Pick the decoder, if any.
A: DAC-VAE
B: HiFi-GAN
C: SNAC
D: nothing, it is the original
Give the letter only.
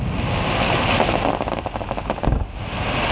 D